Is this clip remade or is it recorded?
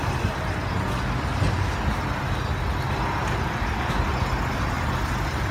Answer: recorded